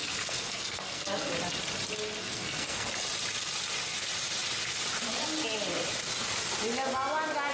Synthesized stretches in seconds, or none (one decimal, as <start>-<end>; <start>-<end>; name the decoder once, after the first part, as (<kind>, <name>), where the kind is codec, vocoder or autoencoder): 0.0-1.3 (codec, SNAC); 2.2-2.9